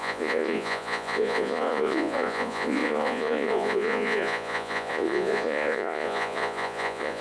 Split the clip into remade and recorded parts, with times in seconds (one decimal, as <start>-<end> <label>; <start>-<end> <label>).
0.0-7.2 remade